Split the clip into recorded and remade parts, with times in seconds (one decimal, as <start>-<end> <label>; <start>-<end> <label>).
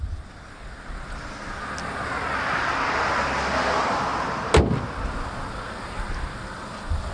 0.0-7.1 recorded